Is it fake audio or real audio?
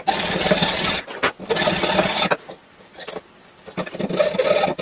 real